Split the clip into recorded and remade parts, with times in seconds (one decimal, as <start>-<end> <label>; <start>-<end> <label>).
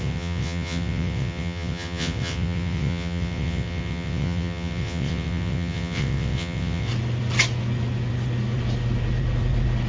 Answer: 0.0-6.9 remade; 6.9-9.9 recorded